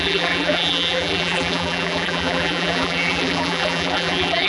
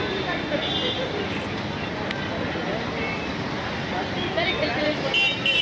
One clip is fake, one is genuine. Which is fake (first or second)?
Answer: first